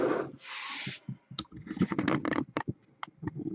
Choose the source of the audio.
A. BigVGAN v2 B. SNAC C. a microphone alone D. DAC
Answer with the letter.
C